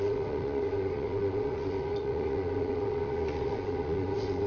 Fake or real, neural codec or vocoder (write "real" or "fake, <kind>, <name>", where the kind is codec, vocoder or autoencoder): fake, vocoder, Vocos